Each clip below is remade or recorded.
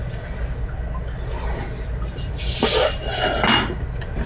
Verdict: recorded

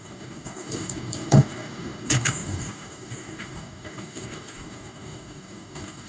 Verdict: remade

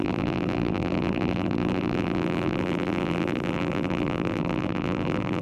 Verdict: remade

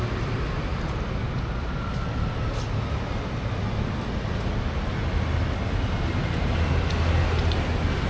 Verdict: recorded